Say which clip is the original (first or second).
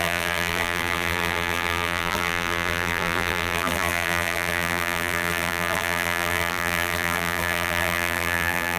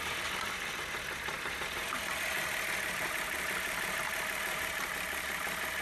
second